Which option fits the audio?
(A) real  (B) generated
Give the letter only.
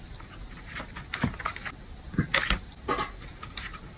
A